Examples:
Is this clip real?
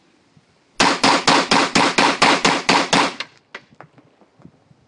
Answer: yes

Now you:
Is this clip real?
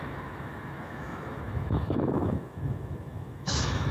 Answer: no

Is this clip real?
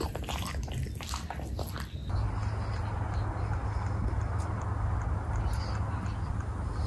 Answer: yes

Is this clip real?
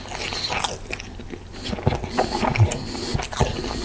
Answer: yes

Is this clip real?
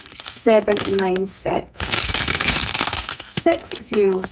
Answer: no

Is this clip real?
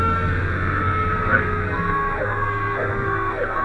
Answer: no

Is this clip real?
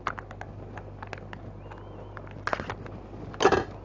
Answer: yes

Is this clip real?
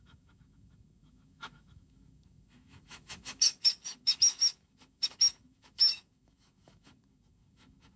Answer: no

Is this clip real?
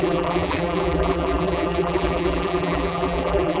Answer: no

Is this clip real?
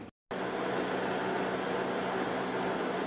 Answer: yes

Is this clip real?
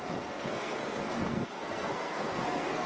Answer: no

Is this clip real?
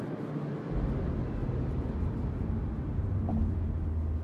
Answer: yes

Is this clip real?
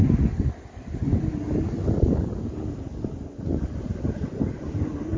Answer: yes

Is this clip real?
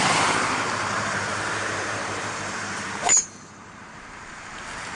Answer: no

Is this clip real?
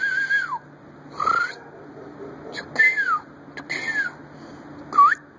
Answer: yes